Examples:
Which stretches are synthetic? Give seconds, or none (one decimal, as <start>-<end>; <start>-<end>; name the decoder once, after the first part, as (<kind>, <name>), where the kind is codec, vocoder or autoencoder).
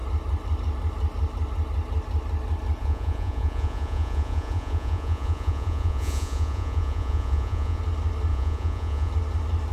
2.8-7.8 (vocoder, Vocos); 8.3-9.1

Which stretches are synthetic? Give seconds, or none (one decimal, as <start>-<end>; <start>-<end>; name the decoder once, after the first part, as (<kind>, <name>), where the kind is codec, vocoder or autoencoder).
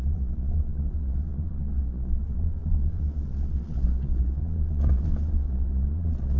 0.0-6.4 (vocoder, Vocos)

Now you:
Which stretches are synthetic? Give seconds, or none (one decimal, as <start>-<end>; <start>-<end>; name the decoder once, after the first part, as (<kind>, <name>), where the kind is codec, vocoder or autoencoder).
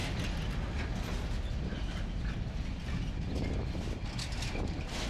none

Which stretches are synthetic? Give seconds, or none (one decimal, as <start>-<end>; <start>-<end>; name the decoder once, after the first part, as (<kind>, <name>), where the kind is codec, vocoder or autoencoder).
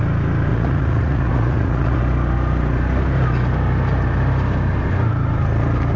0.5-2.0 (vocoder, Vocos)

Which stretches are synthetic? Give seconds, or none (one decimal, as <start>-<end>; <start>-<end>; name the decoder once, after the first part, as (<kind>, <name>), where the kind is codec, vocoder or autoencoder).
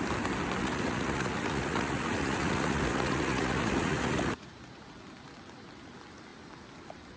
0.6-4.9 (vocoder, Vocos)